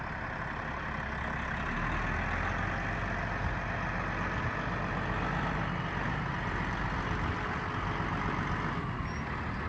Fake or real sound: real